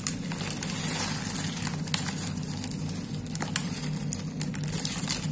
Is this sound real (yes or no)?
yes